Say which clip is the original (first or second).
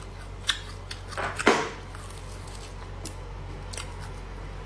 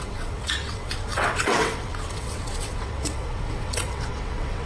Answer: first